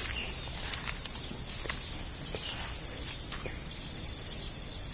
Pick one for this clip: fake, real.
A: real